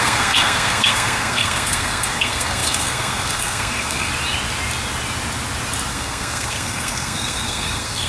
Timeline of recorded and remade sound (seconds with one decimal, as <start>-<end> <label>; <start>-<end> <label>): 0.0-4.1 remade; 4.1-5.9 recorded; 5.9-8.1 remade